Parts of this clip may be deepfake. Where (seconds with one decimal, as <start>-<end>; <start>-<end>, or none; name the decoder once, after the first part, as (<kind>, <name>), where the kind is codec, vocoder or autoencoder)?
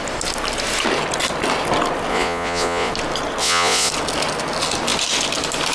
2.1-2.9 (vocoder, Vocos); 3.4-3.9